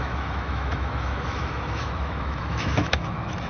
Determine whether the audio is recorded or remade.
remade